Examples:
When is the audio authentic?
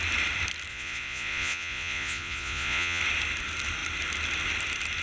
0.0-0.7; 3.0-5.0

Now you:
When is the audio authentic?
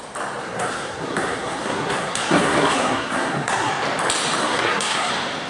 0.0-0.4; 3.7-4.4; 5.1-5.5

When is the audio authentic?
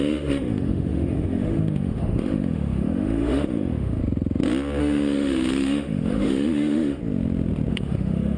4.0-4.8; 7.0-7.7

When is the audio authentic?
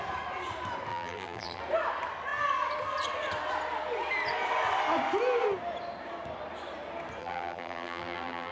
0.0-0.9; 1.6-7.2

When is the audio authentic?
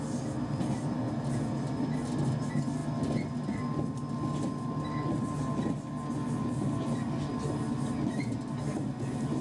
0.0-9.4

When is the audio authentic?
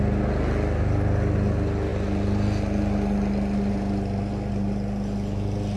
0.0-5.8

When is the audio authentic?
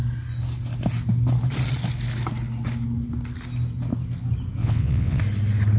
0.0-4.6; 5.2-5.8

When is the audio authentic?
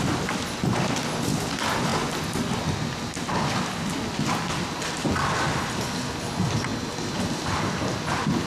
0.0-8.5